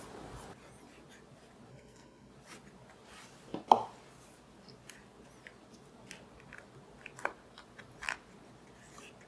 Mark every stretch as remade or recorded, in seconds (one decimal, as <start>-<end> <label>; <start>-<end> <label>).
0.0-1.7 recorded; 1.7-2.3 remade; 2.3-9.3 recorded